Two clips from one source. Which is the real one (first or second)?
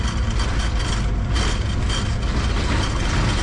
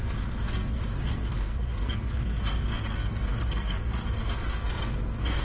first